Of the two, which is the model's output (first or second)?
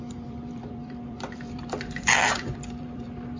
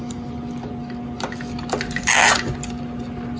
first